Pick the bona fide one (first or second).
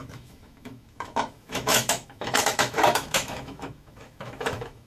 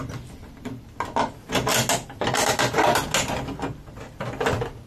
second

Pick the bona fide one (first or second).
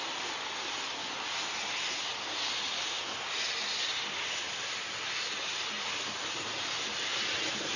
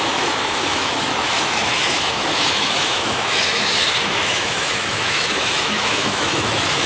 first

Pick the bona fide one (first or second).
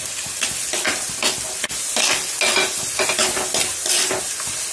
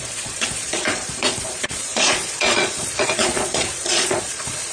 first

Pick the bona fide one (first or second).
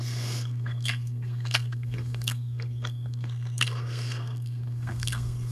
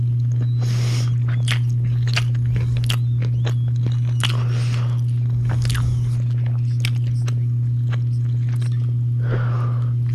second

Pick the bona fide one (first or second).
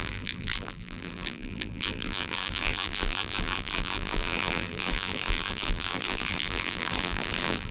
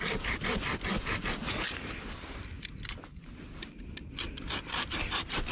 second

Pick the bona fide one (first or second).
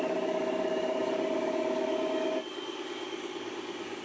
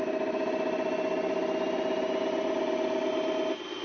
second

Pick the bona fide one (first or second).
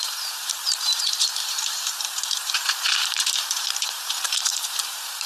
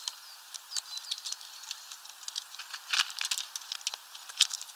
second